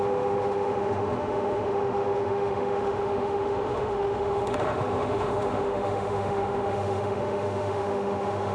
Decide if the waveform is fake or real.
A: fake